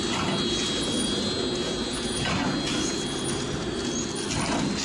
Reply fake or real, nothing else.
real